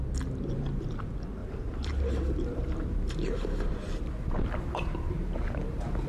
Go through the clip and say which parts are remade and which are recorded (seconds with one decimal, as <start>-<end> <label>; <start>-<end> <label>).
0.0-1.4 recorded; 1.4-5.1 remade; 5.1-6.1 recorded